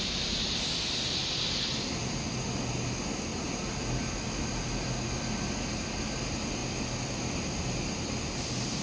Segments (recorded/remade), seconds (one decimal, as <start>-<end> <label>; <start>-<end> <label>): 0.0-8.8 recorded